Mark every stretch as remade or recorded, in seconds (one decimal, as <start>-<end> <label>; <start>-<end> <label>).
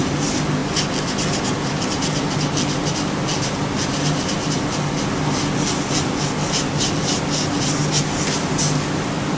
0.0-9.4 recorded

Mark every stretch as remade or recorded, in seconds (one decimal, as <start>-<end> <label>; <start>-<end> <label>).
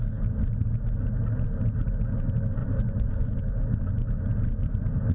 0.0-2.6 recorded; 2.6-3.4 remade; 3.4-5.1 recorded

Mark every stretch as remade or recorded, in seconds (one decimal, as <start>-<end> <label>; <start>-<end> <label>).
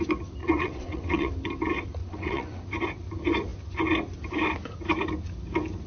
0.0-0.4 recorded; 0.4-1.3 remade; 1.3-2.0 recorded; 2.0-2.6 remade; 2.6-5.9 recorded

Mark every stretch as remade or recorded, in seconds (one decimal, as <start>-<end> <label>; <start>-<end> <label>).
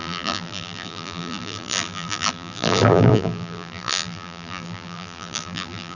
0.0-5.9 remade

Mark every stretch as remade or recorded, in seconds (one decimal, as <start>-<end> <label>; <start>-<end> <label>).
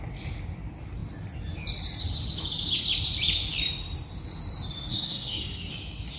0.0-4.9 recorded; 4.9-5.7 remade; 5.7-6.2 recorded